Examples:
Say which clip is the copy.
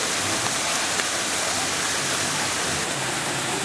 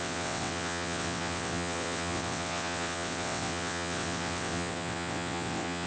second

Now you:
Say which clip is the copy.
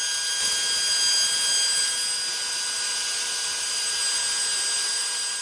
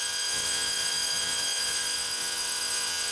second